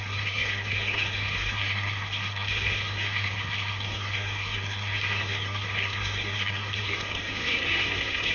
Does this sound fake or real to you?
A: fake